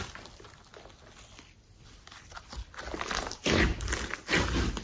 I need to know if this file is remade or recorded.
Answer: recorded